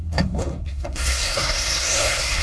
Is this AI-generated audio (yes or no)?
yes